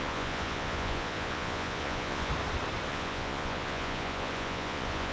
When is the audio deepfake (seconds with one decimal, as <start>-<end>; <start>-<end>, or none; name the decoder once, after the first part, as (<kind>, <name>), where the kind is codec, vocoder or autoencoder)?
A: 0.0-2.3 (vocoder, Vocos); 2.9-5.1